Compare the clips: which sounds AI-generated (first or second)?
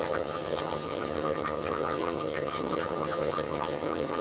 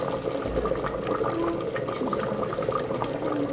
first